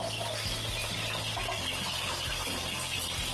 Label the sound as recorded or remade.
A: recorded